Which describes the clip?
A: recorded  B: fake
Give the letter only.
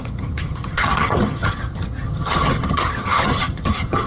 B